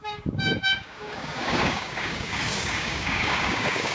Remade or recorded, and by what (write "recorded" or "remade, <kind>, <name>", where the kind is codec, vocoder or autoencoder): remade, codec, DAC